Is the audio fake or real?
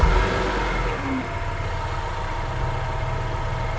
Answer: real